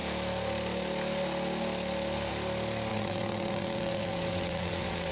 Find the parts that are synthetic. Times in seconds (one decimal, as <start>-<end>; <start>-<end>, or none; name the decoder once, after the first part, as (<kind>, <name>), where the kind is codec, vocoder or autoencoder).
2.9-5.1 (vocoder, WaveNeXt)